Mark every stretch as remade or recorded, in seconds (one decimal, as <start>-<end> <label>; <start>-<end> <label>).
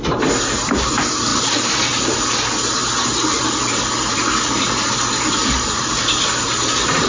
0.0-7.1 recorded